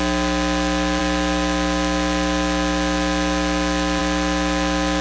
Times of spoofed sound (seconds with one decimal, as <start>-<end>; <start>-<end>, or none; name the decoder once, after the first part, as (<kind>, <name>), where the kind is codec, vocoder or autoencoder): none